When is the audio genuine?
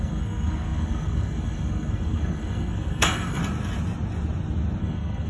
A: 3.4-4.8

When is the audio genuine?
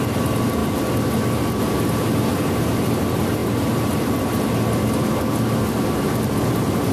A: 0.0-6.9